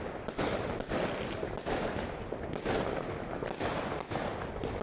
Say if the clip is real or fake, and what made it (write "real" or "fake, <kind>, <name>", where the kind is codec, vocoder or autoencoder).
real